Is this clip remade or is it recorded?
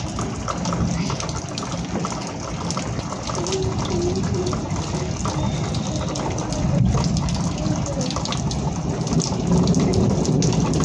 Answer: recorded